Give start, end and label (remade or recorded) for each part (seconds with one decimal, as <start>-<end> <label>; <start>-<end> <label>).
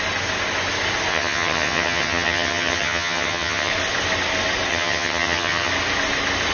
0.0-1.1 recorded; 1.1-3.7 remade; 3.7-4.7 recorded; 4.7-5.7 remade; 5.7-6.5 recorded